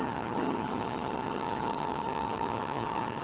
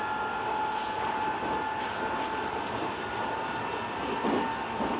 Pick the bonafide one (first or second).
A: second